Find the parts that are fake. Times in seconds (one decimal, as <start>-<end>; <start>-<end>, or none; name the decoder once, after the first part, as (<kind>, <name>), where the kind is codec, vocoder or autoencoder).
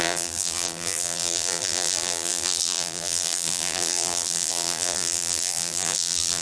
0.0-6.4 (vocoder, BigVGAN v2)